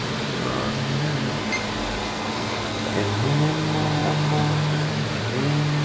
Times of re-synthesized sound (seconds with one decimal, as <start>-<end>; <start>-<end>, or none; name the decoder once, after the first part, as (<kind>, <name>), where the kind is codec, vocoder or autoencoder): 2.0-2.9 (codec, SNAC)